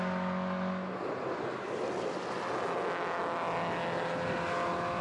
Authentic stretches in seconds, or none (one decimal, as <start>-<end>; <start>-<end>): 0.0-5.0